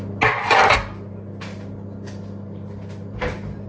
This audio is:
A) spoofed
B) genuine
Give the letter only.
B